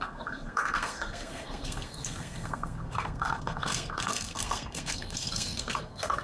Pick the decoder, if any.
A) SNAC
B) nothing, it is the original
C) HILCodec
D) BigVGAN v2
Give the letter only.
A